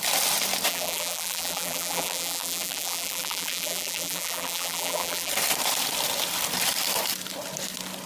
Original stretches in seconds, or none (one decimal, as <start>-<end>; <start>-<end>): 0.0-0.7; 5.3-8.1